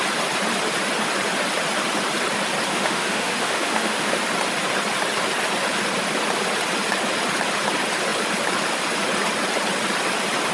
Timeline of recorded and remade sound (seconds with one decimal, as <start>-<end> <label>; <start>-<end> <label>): 0.0-2.7 recorded; 2.7-4.2 remade; 4.2-10.5 recorded